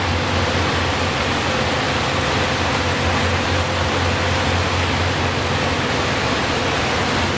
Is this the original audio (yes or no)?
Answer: yes